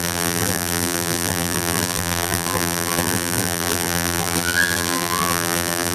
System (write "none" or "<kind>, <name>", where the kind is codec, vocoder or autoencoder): vocoder, BigVGAN v2